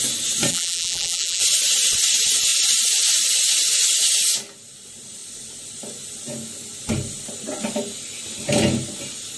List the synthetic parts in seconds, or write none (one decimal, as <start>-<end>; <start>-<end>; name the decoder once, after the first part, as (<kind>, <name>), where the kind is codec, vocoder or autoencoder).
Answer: 0.5-1.4 (vocoder, BigVGAN v2)